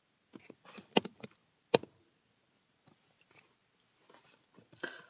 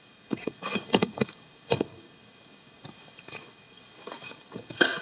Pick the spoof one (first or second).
second